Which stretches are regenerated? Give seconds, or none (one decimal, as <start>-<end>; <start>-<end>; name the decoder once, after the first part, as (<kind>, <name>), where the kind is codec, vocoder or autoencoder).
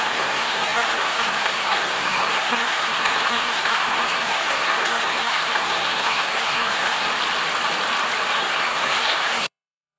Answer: 0.0-7.1 (codec, SNAC); 8.4-10.0